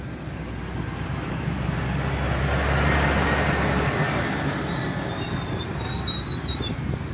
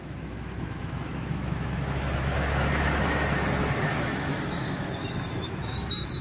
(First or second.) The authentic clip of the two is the first